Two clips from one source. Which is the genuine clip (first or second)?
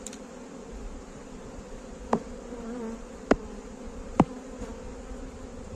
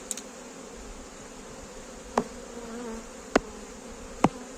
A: second